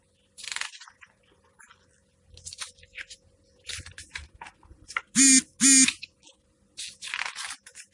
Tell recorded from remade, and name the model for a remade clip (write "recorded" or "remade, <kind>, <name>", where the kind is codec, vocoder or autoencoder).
recorded